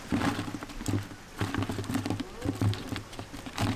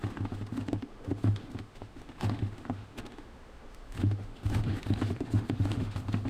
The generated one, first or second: second